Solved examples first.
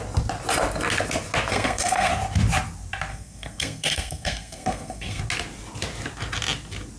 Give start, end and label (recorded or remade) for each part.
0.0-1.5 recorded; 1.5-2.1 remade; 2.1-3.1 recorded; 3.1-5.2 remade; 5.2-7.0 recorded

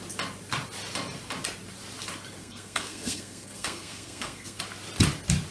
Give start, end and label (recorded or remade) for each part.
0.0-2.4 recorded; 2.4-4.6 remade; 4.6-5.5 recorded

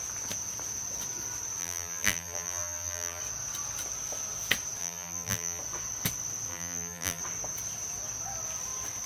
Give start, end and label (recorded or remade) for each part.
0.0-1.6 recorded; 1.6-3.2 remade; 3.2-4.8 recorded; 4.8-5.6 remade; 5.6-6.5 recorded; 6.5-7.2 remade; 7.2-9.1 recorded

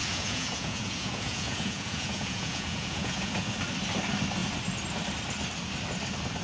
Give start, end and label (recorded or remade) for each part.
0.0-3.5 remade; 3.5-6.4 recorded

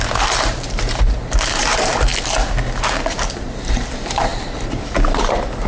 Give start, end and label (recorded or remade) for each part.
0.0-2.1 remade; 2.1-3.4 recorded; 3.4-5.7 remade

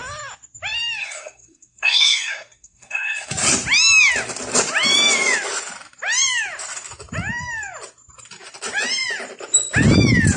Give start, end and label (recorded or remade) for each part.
0.0-1.0 recorded; 1.0-3.3 remade; 3.3-10.4 recorded

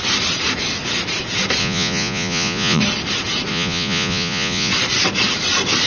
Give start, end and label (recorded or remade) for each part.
0.0-1.6 recorded; 1.6-2.8 remade; 2.8-3.5 recorded; 3.5-4.7 remade; 4.7-5.9 recorded